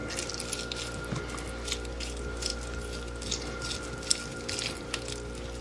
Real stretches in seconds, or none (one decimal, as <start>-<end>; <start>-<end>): 0.0-5.6